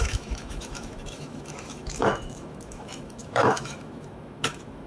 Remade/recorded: remade